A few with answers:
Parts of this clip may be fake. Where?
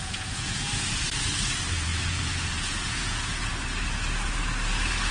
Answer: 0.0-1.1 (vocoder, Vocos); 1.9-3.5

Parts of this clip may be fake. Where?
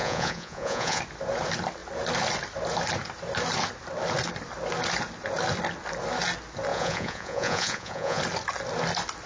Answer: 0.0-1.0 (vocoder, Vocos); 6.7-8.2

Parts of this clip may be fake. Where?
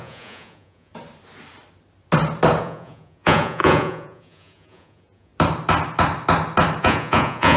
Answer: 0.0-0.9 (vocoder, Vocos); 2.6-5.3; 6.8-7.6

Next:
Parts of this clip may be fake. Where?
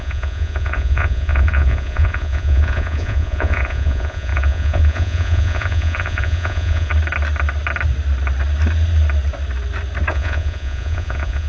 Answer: 0.0-6.9 (vocoder, Vocos); 10.1-11.5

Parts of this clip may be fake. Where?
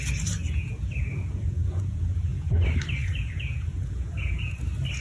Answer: 0.4-2.5 (vocoder, Vocos); 3.0-4.6